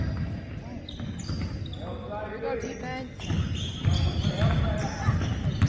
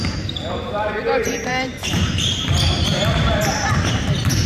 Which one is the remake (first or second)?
second